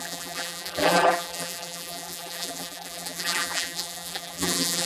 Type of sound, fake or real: fake